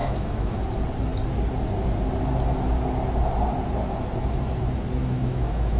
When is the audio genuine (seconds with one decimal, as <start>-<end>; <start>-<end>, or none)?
0.6-5.0